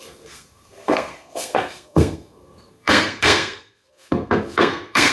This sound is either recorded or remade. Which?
remade